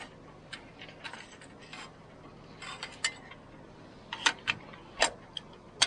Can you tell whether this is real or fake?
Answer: real